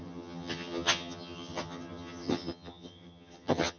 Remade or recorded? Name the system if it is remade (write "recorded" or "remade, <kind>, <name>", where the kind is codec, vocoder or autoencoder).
remade, vocoder, HiFi-GAN